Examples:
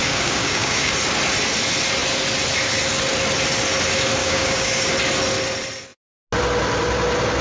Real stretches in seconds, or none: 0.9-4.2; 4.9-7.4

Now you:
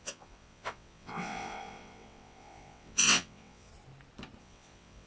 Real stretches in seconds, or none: 3.7-4.4

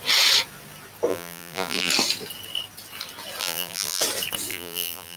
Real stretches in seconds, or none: 0.0-1.1; 1.9-3.4; 4.0-4.5

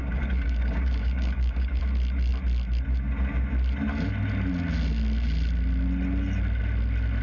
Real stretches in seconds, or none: 1.8-7.2

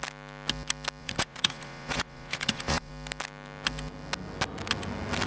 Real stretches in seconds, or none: 0.0-1.0; 2.9-5.3

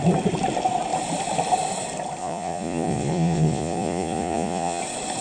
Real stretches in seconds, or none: 0.0-2.2; 4.8-5.2

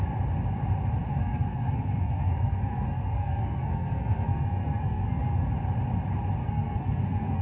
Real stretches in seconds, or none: 0.0-1.1; 5.5-6.4